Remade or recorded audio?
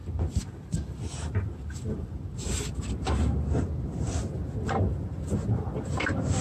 recorded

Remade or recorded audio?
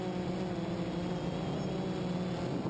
recorded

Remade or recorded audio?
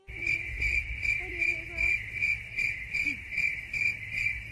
recorded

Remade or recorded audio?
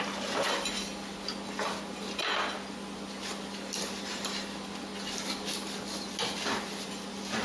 recorded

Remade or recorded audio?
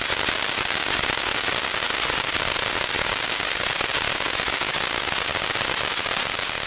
recorded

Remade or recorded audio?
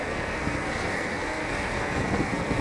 remade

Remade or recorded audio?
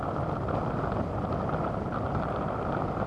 recorded